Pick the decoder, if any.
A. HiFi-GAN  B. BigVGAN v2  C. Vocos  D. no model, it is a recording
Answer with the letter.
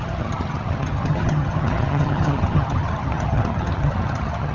A